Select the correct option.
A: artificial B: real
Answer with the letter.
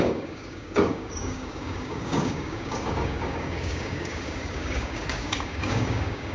A